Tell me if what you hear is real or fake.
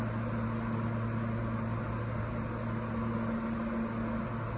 real